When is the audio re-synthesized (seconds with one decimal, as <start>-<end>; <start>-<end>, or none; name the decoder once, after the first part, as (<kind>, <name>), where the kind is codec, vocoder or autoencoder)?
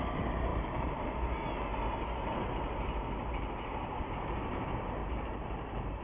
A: 0.5-1.1 (vocoder, BigVGAN v2); 5.0-6.0